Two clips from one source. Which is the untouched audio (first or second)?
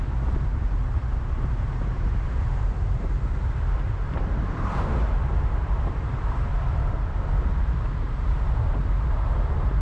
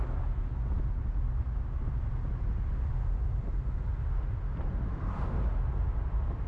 second